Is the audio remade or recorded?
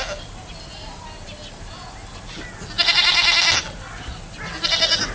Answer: recorded